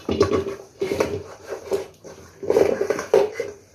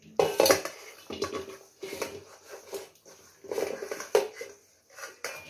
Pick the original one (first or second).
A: second